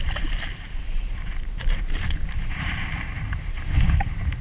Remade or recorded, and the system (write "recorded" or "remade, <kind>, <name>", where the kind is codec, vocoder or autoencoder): remade, vocoder, BigVGAN v2